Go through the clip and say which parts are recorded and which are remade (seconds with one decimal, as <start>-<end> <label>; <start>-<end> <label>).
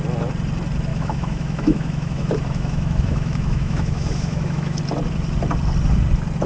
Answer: 0.0-0.9 recorded; 0.9-4.8 remade; 4.8-6.5 recorded